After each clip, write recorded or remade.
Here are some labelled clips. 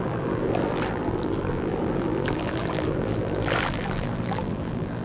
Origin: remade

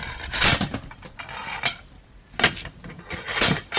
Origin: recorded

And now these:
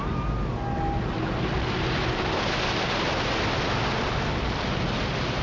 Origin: recorded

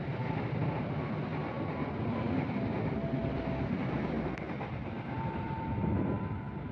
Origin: remade